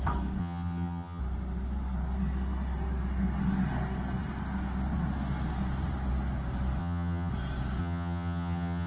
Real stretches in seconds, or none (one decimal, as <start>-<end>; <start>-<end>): 0.0-0.4; 1.2-6.8; 7.3-7.8